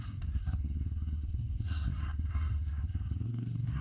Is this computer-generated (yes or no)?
yes